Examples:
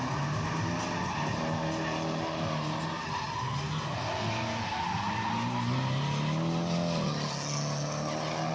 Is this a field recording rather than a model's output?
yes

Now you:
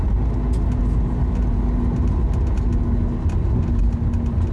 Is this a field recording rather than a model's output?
yes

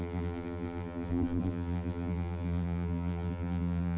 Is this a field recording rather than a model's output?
no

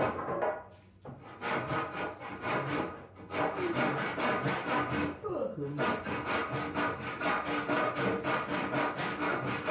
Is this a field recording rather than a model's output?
yes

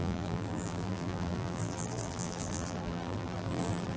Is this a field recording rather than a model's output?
no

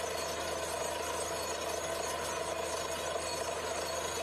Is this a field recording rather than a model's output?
yes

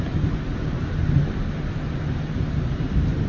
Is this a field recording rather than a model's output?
yes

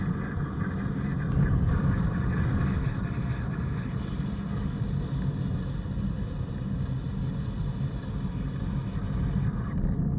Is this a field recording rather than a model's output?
yes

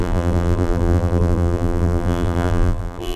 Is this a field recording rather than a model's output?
no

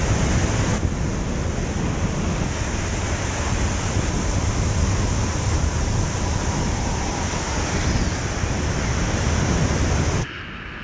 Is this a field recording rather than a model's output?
yes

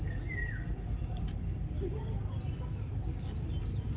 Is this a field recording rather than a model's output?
yes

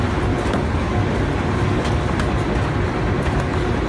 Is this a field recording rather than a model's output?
yes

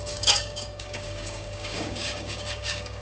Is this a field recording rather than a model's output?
no